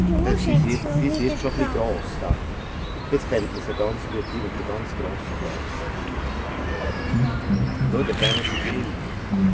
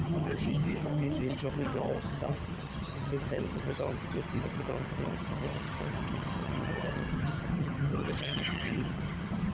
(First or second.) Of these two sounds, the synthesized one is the second